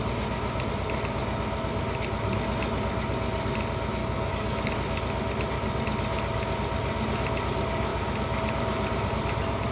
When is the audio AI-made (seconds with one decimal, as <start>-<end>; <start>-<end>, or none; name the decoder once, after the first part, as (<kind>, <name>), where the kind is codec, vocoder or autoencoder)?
4.0-4.7 (codec, DAC)